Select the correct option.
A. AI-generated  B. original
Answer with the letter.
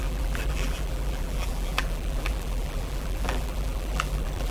A